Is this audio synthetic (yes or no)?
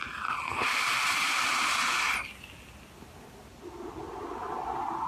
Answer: no